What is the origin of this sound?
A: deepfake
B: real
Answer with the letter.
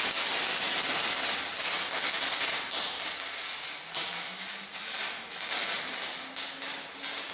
B